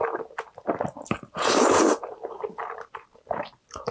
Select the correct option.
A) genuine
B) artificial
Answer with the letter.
B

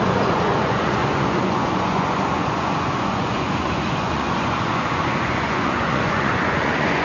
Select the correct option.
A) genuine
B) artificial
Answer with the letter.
B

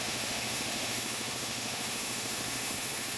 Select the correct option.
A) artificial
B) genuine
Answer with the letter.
A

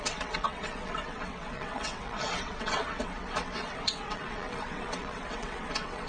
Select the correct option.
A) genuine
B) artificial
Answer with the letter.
B